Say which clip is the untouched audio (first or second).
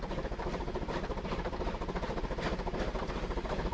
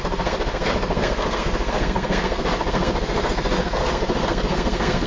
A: first